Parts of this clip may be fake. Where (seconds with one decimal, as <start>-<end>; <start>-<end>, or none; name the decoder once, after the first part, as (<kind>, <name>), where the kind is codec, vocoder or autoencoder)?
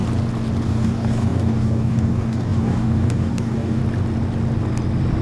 0.6-3.8 (codec, DAC)